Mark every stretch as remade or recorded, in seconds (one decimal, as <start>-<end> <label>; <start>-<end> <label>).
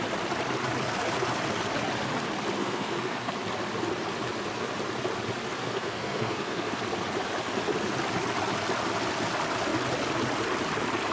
0.0-2.6 recorded; 2.6-3.3 remade; 3.3-5.6 recorded; 5.6-6.8 remade; 6.8-11.1 recorded